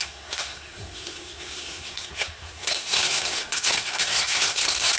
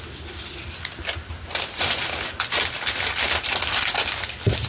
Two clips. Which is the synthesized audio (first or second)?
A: first